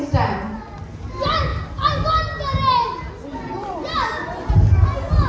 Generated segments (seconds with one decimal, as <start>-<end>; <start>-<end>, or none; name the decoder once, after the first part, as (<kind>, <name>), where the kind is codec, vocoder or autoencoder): none